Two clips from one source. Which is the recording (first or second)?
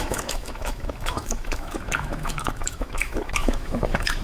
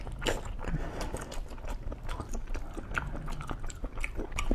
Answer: second